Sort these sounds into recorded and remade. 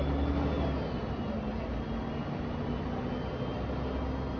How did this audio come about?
recorded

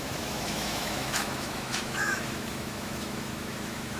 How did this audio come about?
remade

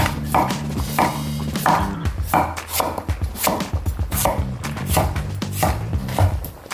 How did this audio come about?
recorded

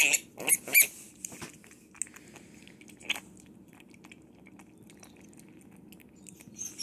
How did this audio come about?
recorded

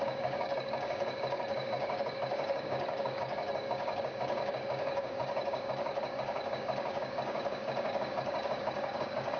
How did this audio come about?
remade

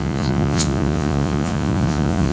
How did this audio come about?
remade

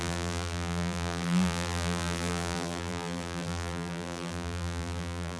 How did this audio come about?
remade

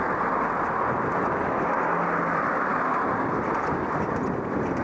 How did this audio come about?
recorded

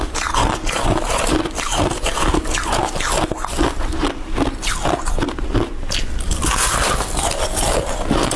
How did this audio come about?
recorded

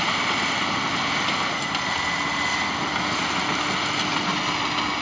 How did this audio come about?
recorded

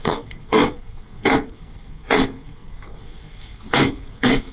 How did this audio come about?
remade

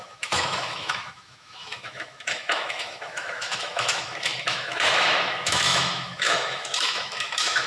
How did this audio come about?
remade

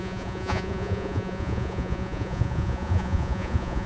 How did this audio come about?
remade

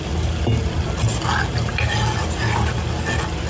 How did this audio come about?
recorded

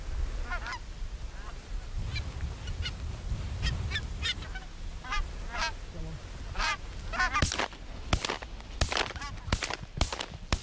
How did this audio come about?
recorded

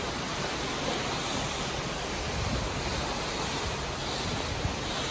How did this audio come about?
recorded